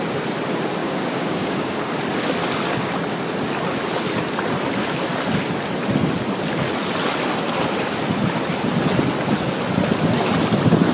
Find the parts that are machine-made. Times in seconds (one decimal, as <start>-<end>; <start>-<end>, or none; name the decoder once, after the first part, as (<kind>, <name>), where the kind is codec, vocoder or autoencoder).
0.8-1.8 (codec, DAC)